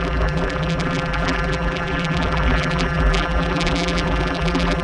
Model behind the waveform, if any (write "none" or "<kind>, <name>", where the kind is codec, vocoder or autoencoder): vocoder, BigVGAN v2